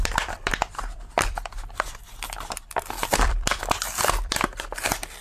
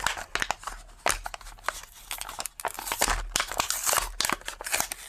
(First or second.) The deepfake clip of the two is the first